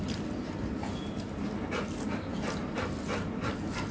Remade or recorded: recorded